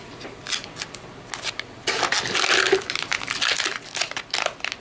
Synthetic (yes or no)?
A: no